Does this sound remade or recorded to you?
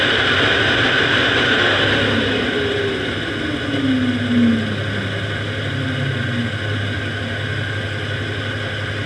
recorded